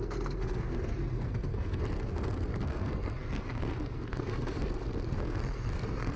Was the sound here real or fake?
fake